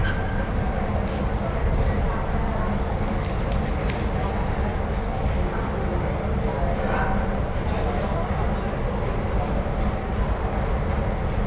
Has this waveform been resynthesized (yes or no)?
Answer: no